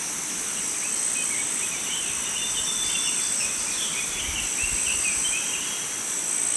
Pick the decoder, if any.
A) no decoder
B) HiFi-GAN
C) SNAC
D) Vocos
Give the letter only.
A